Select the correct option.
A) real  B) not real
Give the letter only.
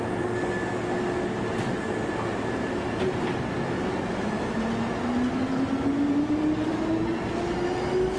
A